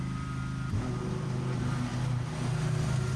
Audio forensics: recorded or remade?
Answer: recorded